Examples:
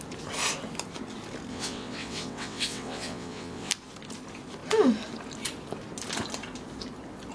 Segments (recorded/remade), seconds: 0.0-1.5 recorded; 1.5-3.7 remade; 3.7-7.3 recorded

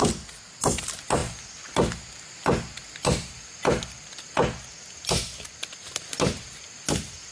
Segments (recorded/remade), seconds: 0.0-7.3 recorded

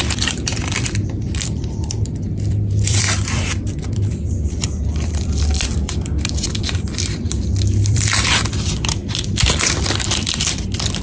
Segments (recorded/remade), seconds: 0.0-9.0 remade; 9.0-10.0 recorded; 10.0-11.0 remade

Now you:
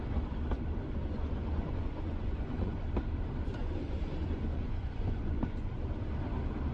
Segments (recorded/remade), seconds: 0.0-1.0 recorded; 1.0-2.8 remade; 2.8-3.6 recorded; 3.6-5.7 remade; 5.7-6.7 recorded

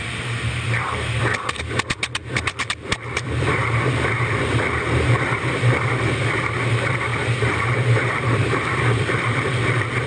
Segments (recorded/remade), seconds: 0.0-7.1 remade; 7.1-7.7 recorded; 7.7-10.1 remade

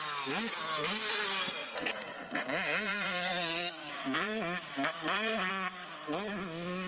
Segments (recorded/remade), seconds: 0.0-1.6 recorded; 1.6-5.5 remade; 5.5-6.9 recorded